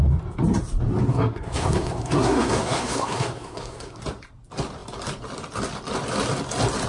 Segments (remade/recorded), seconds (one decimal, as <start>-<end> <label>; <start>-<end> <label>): 0.0-1.1 recorded; 1.1-4.0 remade; 4.0-6.9 recorded